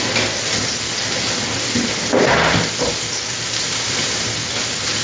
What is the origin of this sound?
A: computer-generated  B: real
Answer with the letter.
A